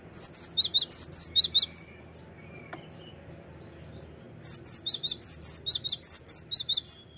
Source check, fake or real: real